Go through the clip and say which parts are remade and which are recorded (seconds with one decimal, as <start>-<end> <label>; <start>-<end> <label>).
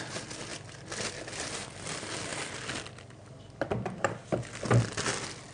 0.0-0.5 recorded; 0.5-1.6 remade; 1.6-2.3 recorded; 2.3-4.3 remade; 4.3-5.5 recorded